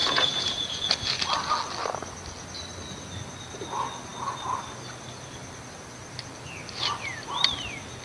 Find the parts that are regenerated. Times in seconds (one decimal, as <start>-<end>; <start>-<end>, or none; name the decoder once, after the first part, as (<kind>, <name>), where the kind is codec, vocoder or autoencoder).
0.0-0.9 (vocoder, Vocos)

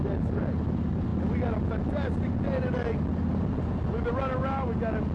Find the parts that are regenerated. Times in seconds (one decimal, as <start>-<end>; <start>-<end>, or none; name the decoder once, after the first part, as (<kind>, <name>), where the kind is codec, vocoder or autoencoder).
none

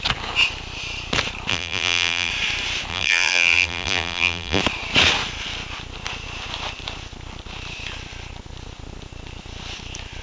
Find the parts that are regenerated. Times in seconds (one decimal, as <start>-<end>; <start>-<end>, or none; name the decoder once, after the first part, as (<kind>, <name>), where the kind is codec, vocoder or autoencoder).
1.5-2.3 (vocoder, BigVGAN v2); 2.9-4.6

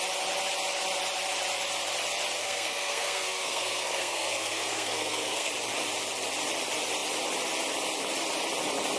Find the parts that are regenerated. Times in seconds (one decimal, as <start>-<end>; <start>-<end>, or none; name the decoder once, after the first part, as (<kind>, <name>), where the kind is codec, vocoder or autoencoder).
2.4-5.5 (codec, SNAC)

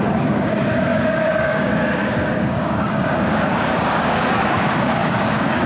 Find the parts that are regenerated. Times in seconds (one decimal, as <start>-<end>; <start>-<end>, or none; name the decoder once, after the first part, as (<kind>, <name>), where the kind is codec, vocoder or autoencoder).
0.0-5.7 (codec, DAC)